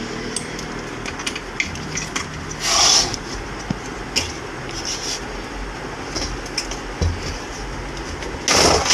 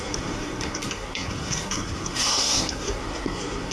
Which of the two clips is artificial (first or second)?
second